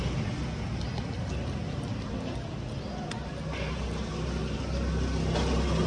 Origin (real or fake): real